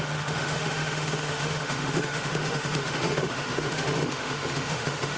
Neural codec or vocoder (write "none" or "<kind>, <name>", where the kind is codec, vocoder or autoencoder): autoencoder, DAC-VAE